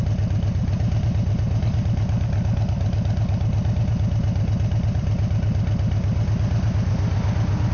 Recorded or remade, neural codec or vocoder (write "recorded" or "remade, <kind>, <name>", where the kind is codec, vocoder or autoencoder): recorded